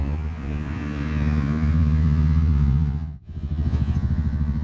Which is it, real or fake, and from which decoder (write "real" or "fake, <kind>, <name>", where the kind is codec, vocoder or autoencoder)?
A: fake, vocoder, Vocos